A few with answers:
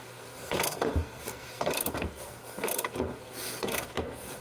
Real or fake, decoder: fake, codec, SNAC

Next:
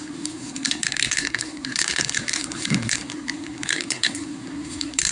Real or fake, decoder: fake, codec, SNAC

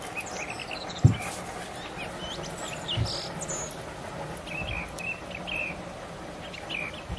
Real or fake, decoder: real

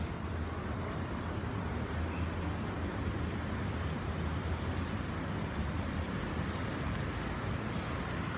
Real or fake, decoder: real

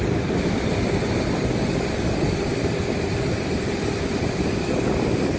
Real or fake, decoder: real